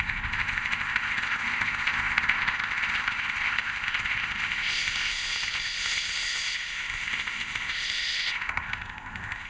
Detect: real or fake fake